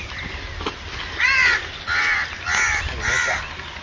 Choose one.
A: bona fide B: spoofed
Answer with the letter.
A